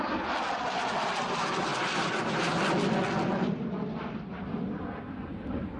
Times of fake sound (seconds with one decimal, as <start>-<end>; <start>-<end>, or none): 1.7-4.3